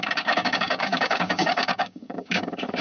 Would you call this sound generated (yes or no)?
yes